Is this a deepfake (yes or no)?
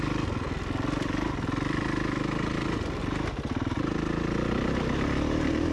no